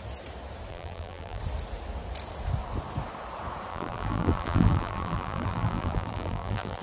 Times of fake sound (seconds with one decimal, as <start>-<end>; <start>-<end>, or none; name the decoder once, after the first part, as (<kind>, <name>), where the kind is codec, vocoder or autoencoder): 0.7-1.4 (vocoder, BigVGAN v2); 3.7-6.8